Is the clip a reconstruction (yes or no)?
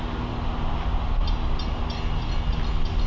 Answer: no